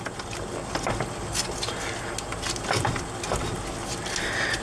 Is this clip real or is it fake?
real